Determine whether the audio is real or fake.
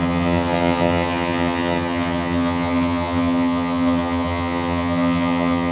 fake